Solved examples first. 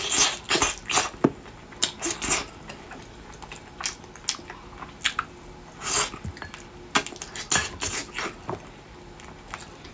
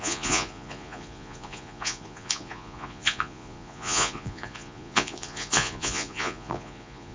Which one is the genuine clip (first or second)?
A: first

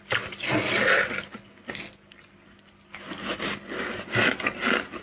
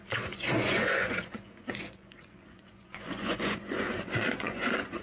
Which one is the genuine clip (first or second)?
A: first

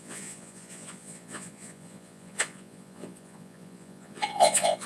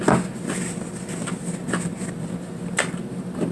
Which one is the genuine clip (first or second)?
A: second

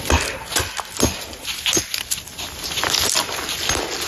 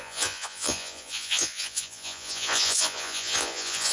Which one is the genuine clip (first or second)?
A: first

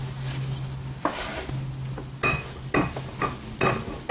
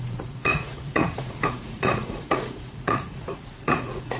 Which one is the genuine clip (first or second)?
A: first